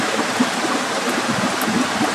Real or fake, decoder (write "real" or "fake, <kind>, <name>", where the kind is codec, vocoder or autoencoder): real